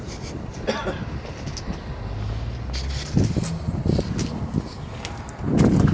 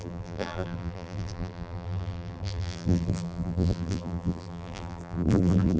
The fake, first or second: second